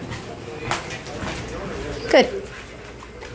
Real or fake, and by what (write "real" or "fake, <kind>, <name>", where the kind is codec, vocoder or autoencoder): real